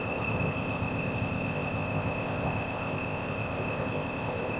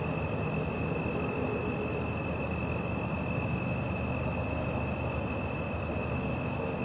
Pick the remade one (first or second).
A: first